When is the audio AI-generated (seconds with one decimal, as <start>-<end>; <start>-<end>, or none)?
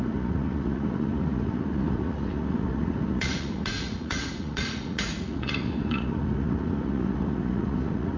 0.0-8.2